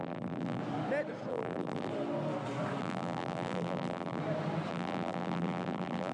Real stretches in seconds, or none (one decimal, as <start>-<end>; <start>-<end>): 0.6-1.3; 1.9-2.8; 4.2-4.7